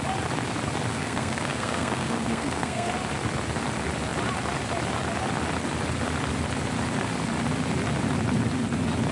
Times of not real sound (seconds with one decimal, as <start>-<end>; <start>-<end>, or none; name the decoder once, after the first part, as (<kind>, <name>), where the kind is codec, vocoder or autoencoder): 0.9-2.9 (codec, SNAC)